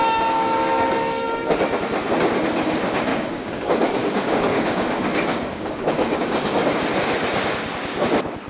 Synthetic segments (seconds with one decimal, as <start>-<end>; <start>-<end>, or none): 0.0-1.6; 3.1-6.7